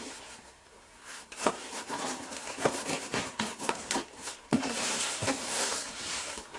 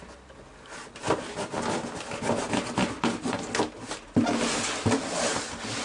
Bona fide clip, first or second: second